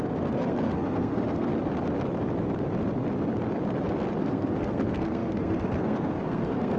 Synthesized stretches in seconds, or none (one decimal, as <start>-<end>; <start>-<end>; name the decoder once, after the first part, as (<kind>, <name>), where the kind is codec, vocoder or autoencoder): 0.0-1.5 (codec, SNAC); 4.2-6.8